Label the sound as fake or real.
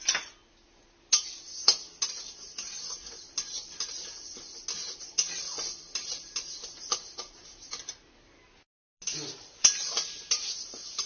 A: real